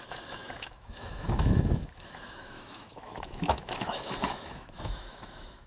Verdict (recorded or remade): remade